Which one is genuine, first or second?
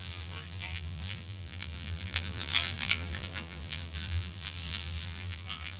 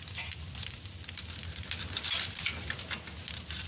second